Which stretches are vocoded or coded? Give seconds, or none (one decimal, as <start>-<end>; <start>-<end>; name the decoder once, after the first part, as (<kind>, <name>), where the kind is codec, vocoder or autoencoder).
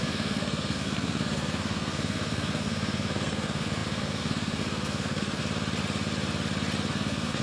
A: 0.0-5.4 (codec, SNAC); 6.9-7.4